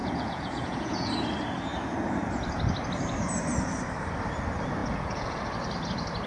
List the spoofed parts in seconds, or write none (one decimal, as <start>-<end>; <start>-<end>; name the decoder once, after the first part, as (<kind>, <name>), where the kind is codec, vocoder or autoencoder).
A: 0.0-1.1 (vocoder, Vocos); 4.8-5.4